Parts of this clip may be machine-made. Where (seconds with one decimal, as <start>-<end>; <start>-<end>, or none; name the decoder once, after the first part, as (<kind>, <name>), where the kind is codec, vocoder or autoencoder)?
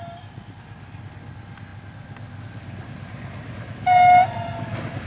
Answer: none